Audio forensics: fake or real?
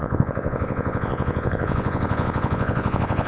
fake